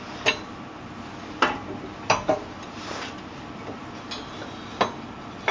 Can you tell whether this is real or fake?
real